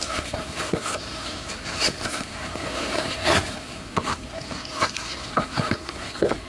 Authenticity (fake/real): fake